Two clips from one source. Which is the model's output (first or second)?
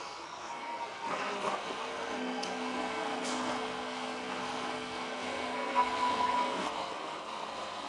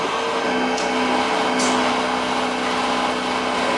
first